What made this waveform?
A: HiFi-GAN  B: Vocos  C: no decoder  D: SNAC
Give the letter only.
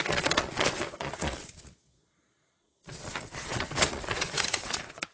B